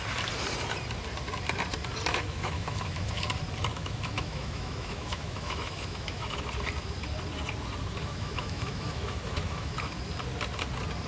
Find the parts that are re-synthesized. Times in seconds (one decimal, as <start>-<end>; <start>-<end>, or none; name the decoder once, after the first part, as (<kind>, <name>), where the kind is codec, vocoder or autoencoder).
2.1-3.3 (autoencoder, DAC-VAE); 3.7-6.4; 8.0-9.8